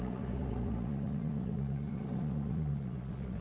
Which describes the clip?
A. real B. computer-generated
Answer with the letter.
B